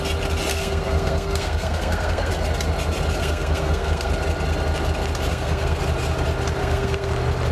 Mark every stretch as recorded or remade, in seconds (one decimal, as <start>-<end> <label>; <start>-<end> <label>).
0.0-0.5 recorded; 0.5-2.3 remade; 2.3-3.2 recorded; 3.2-4.1 remade; 4.1-5.3 recorded; 5.3-5.8 remade; 5.8-6.6 recorded; 6.6-7.1 remade; 7.1-7.5 recorded